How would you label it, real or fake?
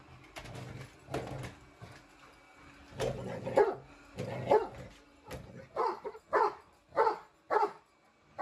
real